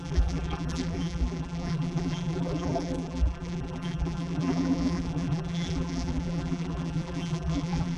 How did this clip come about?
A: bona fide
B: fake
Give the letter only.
B